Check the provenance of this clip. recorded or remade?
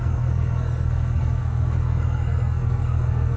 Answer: remade